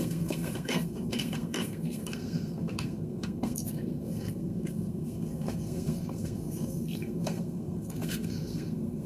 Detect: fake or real fake